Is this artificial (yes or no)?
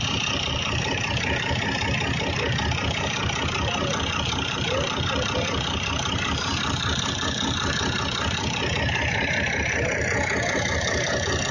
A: no